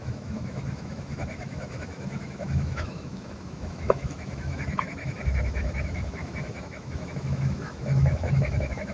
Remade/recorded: remade